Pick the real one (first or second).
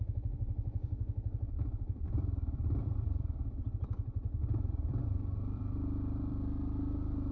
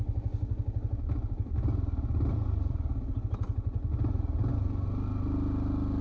second